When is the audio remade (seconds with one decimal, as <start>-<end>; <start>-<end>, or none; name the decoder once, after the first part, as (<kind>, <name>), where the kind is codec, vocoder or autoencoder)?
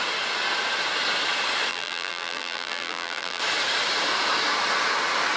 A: 1.7-3.4 (vocoder, BigVGAN v2)